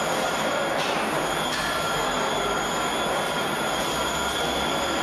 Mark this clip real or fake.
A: real